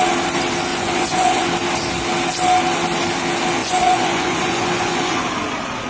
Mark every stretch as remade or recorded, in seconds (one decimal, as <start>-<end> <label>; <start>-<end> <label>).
0.0-0.7 recorded; 0.7-1.5 remade; 1.5-3.6 recorded; 3.6-5.2 remade; 5.2-5.9 recorded

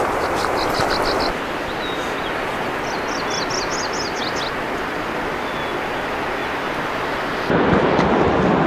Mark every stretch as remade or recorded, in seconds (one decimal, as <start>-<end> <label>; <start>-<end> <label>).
0.0-8.7 recorded

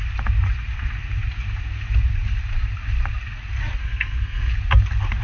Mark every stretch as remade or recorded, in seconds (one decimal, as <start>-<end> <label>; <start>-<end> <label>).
0.0-3.8 recorded; 3.8-4.5 remade; 4.5-5.2 recorded

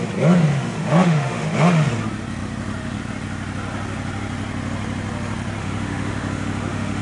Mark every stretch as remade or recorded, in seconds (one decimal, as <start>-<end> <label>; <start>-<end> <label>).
0.0-0.5 recorded; 0.5-1.9 remade; 1.9-5.6 recorded; 5.6-7.0 remade

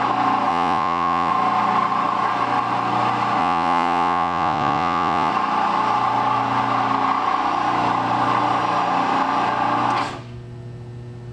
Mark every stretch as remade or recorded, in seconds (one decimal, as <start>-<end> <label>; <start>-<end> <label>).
0.0-0.5 recorded; 0.5-1.3 remade; 1.3-3.4 recorded; 3.4-5.3 remade; 5.3-11.3 recorded

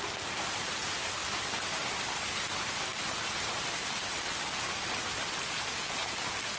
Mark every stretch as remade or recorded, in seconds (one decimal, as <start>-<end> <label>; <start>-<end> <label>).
0.0-6.6 recorded

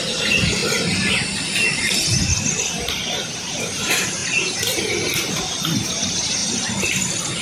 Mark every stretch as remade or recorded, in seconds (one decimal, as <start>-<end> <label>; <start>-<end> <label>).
0.0-0.6 remade; 0.6-2.5 recorded; 2.5-4.2 remade; 4.2-5.3 recorded; 5.3-7.4 remade